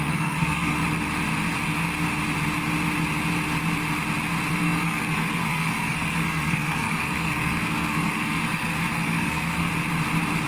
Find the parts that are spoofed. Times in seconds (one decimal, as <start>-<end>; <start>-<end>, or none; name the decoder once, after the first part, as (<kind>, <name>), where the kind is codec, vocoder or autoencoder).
0.0-0.8 (codec, SNAC); 4.5-9.7